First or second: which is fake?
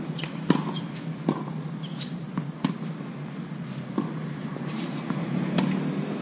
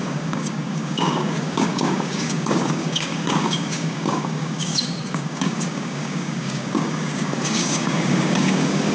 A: second